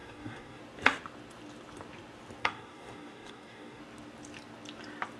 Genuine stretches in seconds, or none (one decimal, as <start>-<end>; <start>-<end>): 0.6-2.4; 3.8-5.2